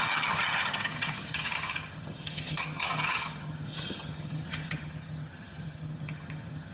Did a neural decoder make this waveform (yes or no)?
yes